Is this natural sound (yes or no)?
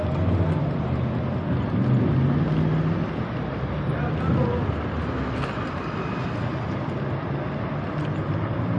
yes